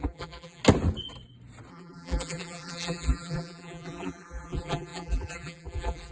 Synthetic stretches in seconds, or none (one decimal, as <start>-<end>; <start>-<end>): 0.0-0.6; 1.7-6.1